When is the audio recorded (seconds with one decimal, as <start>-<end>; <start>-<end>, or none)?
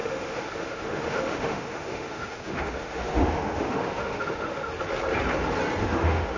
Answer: 4.7-5.8